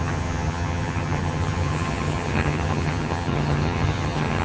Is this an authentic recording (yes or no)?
no